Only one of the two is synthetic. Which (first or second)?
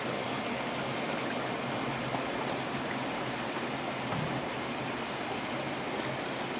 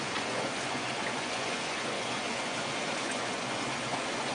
second